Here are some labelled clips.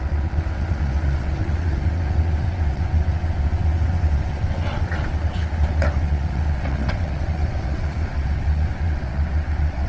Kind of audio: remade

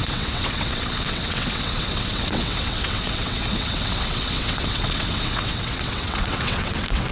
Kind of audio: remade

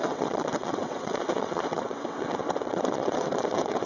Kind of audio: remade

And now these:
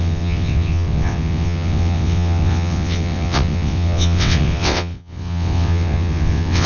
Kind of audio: remade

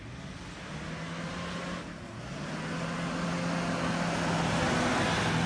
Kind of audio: recorded